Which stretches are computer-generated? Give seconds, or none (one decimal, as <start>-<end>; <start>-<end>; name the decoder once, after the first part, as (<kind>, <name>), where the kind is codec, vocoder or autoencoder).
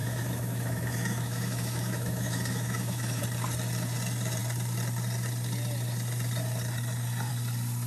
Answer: 0.0-3.2 (autoencoder, DAC-VAE)